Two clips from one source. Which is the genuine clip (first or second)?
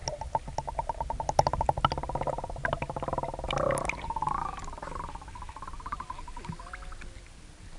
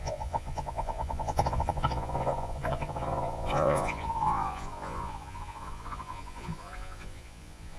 first